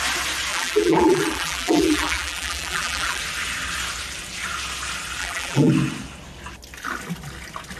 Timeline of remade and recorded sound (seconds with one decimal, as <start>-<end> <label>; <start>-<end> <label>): 0.0-0.5 recorded; 0.5-3.2 remade; 3.2-5.2 recorded; 5.2-5.7 remade; 5.7-7.8 recorded